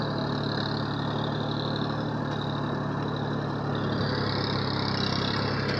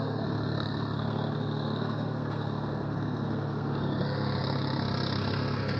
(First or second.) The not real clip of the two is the second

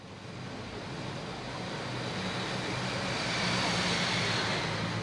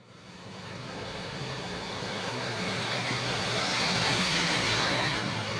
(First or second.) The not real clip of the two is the second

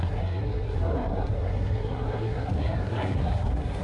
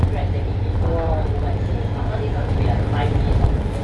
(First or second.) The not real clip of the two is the first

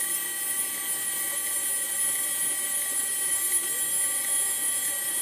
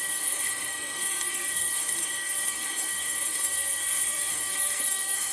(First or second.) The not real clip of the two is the second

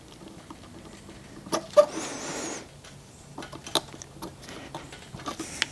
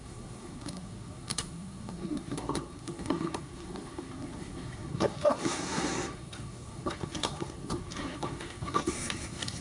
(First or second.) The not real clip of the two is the second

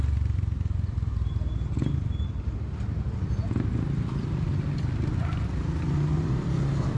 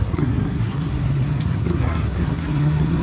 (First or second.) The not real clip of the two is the second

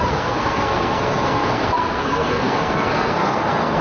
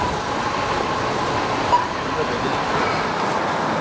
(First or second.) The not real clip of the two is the first